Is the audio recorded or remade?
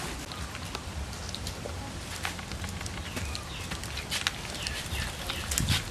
recorded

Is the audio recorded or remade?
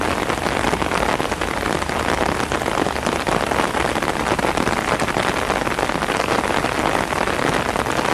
recorded